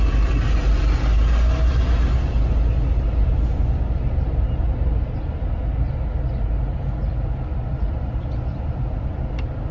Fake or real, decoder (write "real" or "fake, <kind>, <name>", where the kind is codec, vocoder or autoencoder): real